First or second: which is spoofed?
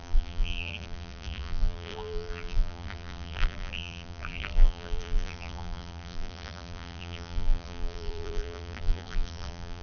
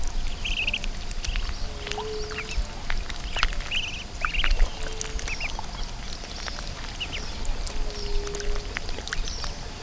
first